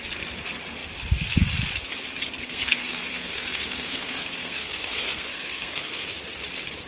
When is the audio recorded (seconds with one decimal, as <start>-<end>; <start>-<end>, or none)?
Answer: 0.0-2.4; 6.2-6.9